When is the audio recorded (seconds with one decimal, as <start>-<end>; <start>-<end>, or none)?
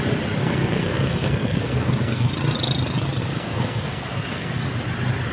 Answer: 0.0-0.4; 2.3-3.2; 4.6-5.3